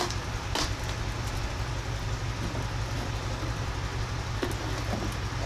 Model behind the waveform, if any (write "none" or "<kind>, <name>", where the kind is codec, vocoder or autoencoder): none